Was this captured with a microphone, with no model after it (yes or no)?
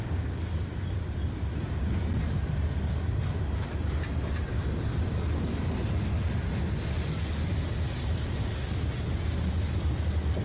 yes